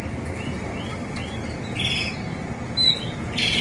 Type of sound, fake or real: real